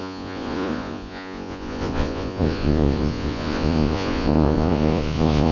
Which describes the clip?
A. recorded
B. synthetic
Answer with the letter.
B